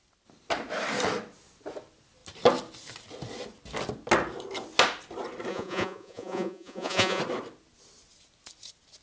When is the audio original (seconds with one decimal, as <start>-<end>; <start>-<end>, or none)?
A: 0.0-5.5; 7.2-9.0

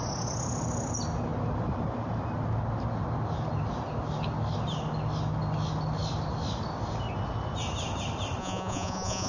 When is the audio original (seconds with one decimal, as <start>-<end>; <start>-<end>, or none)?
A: 0.0-8.4

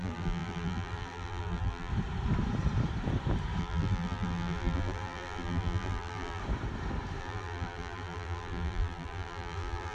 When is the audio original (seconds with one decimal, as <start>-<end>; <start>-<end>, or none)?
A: 1.9-3.6; 6.4-7.2